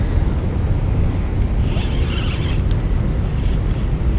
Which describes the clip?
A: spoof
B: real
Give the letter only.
B